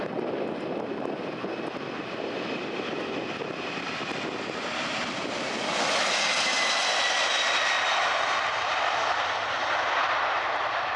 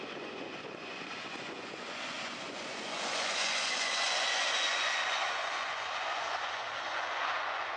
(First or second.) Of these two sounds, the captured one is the first